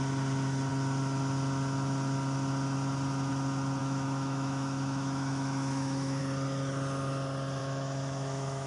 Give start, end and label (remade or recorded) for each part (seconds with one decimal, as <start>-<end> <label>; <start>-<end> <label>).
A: 0.0-3.8 recorded; 3.8-6.2 remade; 6.2-7.6 recorded; 7.6-8.7 remade